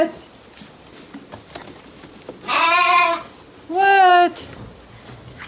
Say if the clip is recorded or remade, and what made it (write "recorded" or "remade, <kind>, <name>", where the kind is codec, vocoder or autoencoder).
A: recorded